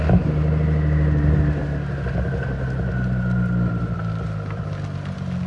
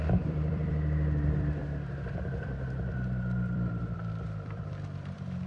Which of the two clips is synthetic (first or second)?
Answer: second